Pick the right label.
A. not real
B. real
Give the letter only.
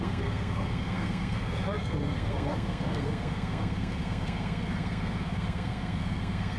A